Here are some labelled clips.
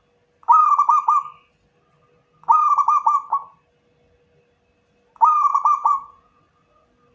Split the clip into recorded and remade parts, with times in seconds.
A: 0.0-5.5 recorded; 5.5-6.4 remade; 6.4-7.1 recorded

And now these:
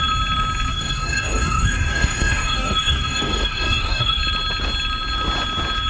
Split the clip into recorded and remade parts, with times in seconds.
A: 0.0-0.7 recorded; 0.7-4.2 remade; 4.2-5.9 recorded

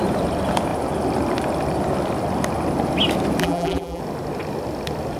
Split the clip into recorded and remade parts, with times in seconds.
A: 0.0-3.4 recorded; 3.4-4.0 remade; 4.0-5.2 recorded

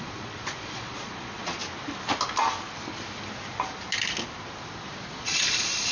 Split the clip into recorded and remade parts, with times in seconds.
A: 0.0-1.6 remade; 1.6-5.1 recorded; 5.1-5.9 remade

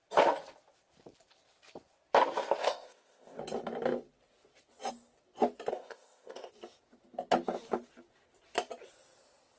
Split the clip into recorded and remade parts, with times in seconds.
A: 0.0-2.6 recorded; 2.6-3.4 remade; 3.4-5.7 recorded; 5.7-6.5 remade; 6.5-9.6 recorded

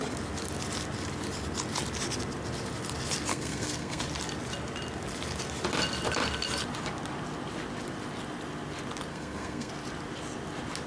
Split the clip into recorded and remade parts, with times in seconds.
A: 0.0-3.3 recorded; 3.3-4.0 remade; 4.0-9.1 recorded; 9.1-9.7 remade; 9.7-10.9 recorded